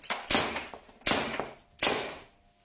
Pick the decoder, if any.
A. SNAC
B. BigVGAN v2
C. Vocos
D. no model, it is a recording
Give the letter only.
D